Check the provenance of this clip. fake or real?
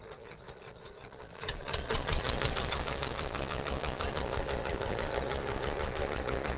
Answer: fake